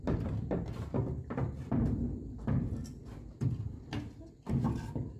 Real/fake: real